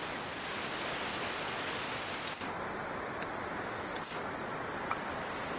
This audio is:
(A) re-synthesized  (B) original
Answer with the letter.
B